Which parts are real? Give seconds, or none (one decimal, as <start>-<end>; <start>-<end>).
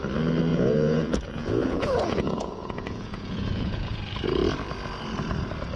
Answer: 0.0-0.5; 4.0-5.8